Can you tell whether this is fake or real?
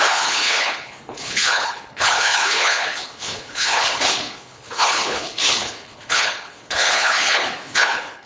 fake